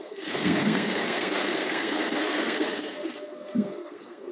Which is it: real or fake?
fake